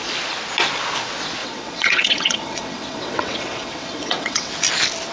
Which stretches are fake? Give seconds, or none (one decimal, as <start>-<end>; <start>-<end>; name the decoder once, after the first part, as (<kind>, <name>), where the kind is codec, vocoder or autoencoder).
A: 1.4-4.5 (vocoder, WaveNeXt)